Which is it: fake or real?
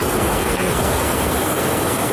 fake